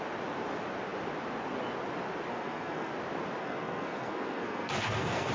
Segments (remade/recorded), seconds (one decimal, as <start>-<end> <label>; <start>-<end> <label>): 0.0-2.3 recorded; 2.3-2.9 remade; 2.9-3.4 recorded; 3.4-5.3 remade